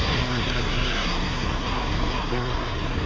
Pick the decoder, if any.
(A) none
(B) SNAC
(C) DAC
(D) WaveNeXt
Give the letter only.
B